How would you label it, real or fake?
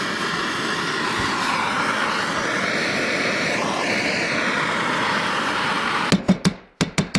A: real